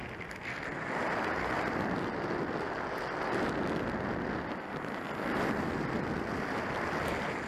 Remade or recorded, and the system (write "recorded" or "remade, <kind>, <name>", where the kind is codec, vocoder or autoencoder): recorded